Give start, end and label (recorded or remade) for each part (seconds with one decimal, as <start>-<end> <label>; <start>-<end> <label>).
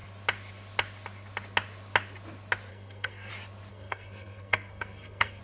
0.0-2.7 recorded; 2.7-3.3 remade; 3.3-3.7 recorded; 3.7-5.4 remade